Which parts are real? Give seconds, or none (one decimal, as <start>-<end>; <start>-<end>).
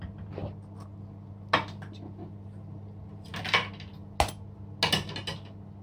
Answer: 0.0-5.8